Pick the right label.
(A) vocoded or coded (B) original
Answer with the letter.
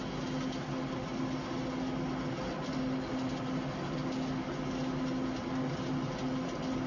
B